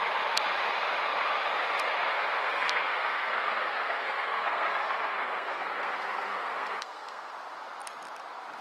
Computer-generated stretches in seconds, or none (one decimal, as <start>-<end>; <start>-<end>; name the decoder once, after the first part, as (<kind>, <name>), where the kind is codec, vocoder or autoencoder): 2.1-7.3 (codec, SNAC)